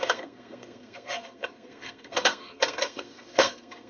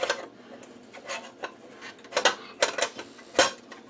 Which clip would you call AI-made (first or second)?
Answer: first